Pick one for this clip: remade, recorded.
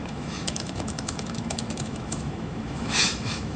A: remade